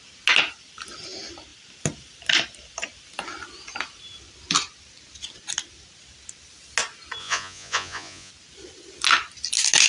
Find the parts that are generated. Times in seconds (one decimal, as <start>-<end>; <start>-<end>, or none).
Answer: 7.2-8.3